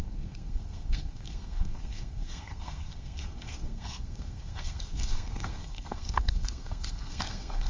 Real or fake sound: fake